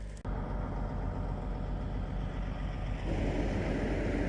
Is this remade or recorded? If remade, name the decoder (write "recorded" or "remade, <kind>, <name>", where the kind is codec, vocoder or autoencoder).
recorded